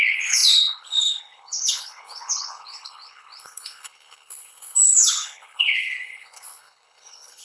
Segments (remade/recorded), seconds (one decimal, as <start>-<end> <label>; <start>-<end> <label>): 0.0-7.4 remade